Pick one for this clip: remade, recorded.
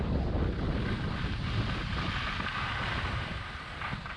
recorded